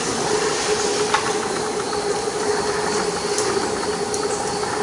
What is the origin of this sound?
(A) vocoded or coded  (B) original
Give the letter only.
B